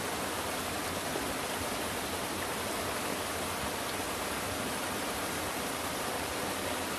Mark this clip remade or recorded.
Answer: recorded